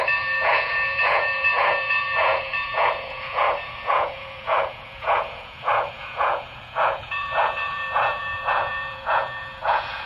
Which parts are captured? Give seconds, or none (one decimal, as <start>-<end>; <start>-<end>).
none